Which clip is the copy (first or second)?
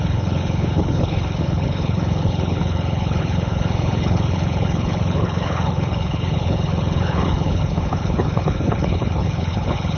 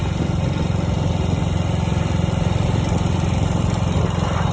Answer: first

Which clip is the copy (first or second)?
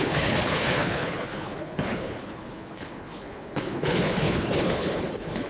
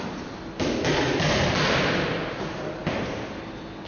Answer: first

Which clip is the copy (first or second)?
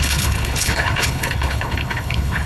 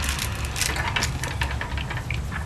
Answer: first